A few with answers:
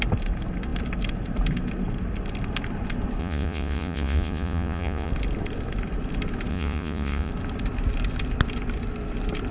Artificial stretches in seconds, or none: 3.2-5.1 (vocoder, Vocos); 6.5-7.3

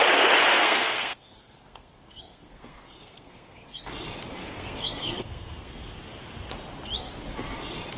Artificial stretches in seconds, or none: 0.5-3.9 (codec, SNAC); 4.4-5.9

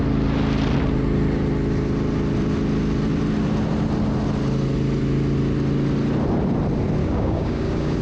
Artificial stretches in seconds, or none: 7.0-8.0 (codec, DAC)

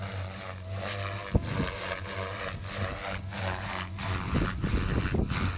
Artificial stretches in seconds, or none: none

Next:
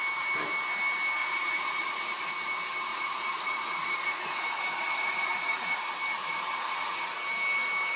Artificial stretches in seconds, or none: 1.2-2.3 (vocoder, Vocos); 2.9-5.8; 6.2-7.1

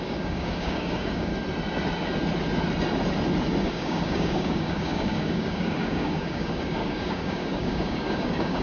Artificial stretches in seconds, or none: 0.0-1.3 (codec, DAC); 3.6-8.6

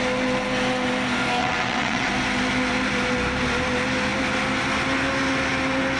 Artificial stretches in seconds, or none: 1.4-2.1 (vocoder, WaveNeXt)